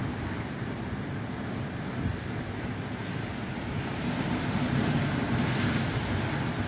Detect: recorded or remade recorded